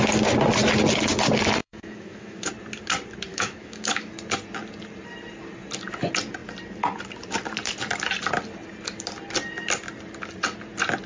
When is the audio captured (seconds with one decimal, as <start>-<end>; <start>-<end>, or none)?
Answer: 0.0-1.6; 2.5-3.3; 4.1-11.1